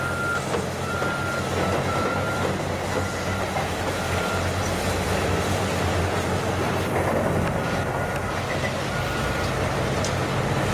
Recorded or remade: recorded